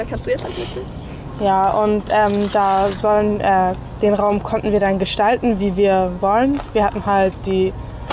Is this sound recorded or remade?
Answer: recorded